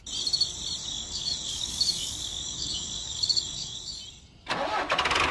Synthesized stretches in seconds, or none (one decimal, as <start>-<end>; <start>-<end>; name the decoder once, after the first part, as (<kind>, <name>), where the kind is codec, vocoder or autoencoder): 0.8-4.0 (codec, DAC)